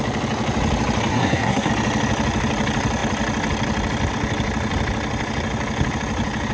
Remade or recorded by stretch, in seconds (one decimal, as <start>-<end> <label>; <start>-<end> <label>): 0.0-1.1 recorded; 1.1-1.7 remade; 1.7-6.5 recorded

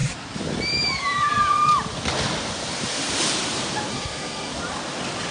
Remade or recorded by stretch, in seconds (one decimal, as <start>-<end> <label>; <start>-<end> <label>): 0.0-3.9 recorded; 3.9-4.5 remade; 4.5-5.3 recorded

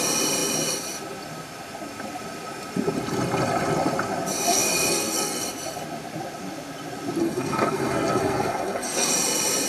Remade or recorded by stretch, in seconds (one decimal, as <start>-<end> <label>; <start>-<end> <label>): 0.0-4.5 recorded; 4.5-5.4 remade; 5.4-7.2 recorded; 7.2-9.1 remade; 9.1-9.7 recorded